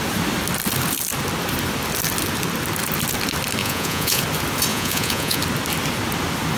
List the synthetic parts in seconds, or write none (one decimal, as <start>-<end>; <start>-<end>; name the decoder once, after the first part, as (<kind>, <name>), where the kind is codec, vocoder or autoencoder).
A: 3.6-4.2 (vocoder, Vocos); 4.7-5.4